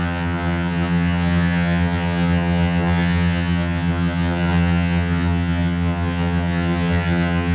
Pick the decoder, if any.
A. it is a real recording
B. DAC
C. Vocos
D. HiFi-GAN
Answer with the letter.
D